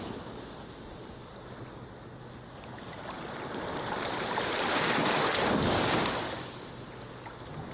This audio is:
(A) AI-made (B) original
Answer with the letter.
B